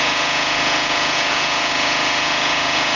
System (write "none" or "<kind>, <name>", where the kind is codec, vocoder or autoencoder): vocoder, Vocos